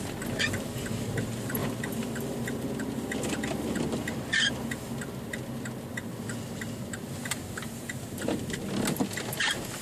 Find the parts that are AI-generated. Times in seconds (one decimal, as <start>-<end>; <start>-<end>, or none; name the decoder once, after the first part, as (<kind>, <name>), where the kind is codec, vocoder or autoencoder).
none